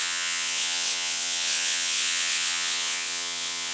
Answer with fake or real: fake